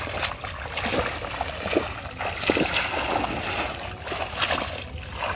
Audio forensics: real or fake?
real